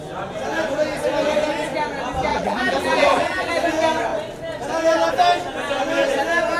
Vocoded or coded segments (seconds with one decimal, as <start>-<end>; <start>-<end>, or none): 2.3-3.5

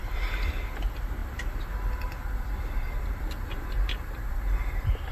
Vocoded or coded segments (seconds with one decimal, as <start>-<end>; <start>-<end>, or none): none